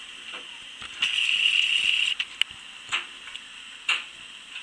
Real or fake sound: real